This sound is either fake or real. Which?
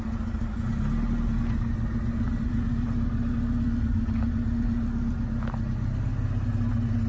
real